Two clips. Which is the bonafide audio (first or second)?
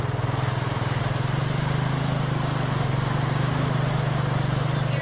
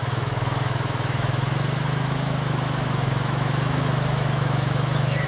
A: first